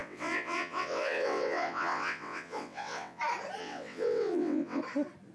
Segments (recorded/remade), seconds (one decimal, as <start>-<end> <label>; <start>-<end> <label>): 0.0-3.2 remade; 3.2-3.6 recorded; 3.6-4.8 remade; 4.8-5.3 recorded